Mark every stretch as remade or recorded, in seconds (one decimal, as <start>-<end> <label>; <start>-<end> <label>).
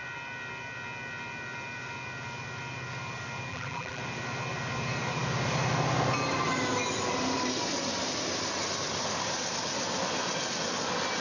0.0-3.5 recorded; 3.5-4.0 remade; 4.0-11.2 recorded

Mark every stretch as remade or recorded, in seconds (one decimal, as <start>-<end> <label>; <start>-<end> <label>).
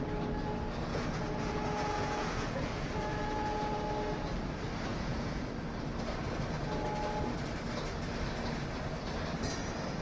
0.0-0.9 recorded; 0.9-3.8 remade; 3.8-4.9 recorded; 4.9-5.5 remade; 5.5-10.0 recorded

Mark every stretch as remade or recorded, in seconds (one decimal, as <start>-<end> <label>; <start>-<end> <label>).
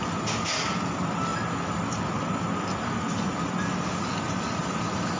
0.0-1.3 remade; 1.3-4.4 recorded; 4.4-5.2 remade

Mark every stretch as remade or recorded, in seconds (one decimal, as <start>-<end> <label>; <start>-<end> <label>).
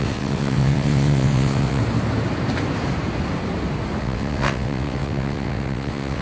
0.0-1.8 remade; 1.8-4.0 recorded; 4.0-6.2 remade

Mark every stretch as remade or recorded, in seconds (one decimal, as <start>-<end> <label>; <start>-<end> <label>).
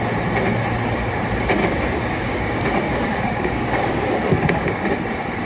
0.0-1.6 recorded; 1.6-4.9 remade; 4.9-5.5 recorded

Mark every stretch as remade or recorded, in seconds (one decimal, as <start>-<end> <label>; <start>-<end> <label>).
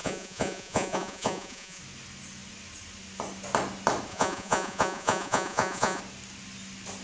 0.0-1.8 remade; 1.8-4.1 recorded; 4.1-6.0 remade; 6.0-7.0 recorded